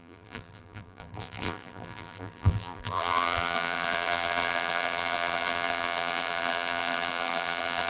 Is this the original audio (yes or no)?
no